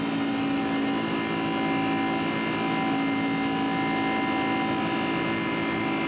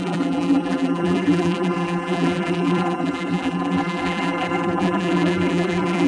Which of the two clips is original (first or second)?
first